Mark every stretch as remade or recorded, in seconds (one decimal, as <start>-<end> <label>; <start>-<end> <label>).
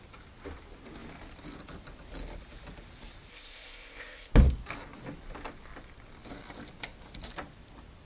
0.0-3.3 recorded; 3.3-4.3 remade; 4.3-8.1 recorded